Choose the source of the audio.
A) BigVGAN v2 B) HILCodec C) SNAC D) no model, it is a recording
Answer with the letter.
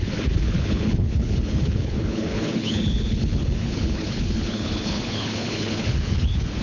B